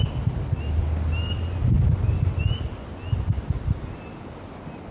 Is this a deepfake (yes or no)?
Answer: no